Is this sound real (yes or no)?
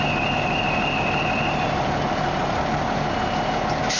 yes